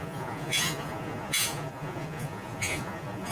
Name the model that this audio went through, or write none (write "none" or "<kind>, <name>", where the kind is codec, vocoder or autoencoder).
vocoder, Vocos